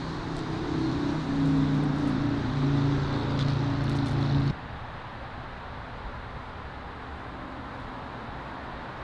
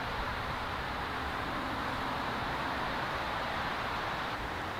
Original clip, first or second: first